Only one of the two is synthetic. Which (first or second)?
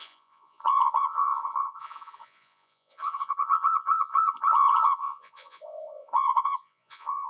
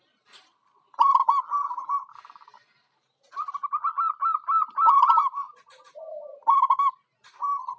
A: first